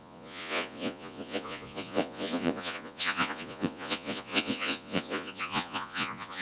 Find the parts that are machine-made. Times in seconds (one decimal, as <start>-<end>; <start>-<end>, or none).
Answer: 0.0-6.4